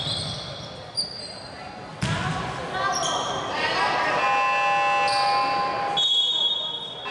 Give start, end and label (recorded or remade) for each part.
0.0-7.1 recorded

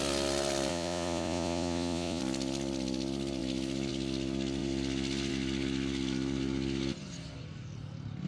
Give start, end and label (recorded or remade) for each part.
0.0-0.7 recorded; 0.7-2.2 remade; 2.2-8.3 recorded

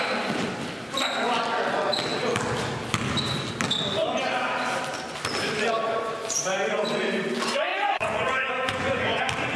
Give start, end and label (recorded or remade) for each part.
0.0-7.7 recorded; 7.7-9.2 remade; 9.2-9.6 recorded

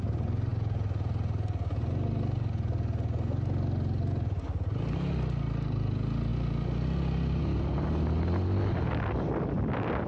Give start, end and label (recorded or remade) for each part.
0.0-10.1 recorded

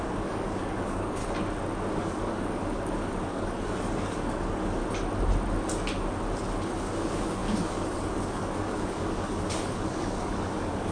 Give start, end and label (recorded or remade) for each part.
0.0-1.2 remade; 1.2-1.9 recorded; 1.9-4.8 remade; 4.8-6.8 recorded; 6.8-10.9 remade